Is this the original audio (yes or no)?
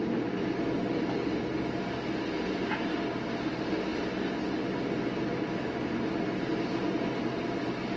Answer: yes